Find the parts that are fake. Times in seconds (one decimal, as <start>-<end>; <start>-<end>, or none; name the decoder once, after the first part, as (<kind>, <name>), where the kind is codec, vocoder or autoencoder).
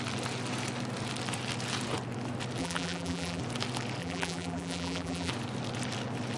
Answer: 2.6-3.4 (vocoder, BigVGAN v2); 4.0-5.3